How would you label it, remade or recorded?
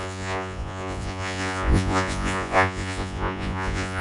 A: remade